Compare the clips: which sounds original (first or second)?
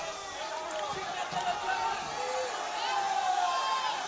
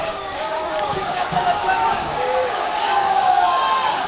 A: first